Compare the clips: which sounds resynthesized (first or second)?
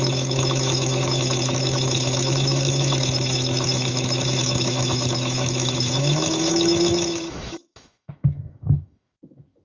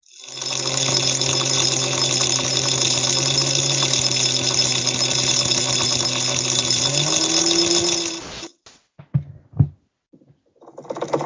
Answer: first